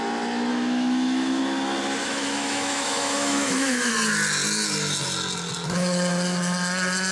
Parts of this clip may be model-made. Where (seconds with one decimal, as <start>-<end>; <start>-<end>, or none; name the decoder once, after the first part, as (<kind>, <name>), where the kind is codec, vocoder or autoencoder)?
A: 0.5-1.4 (autoencoder, DAC-VAE); 2.0-3.9